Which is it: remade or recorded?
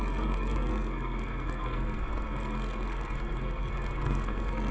remade